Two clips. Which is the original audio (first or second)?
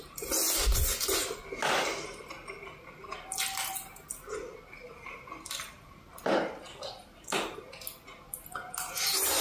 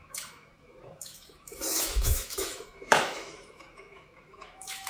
first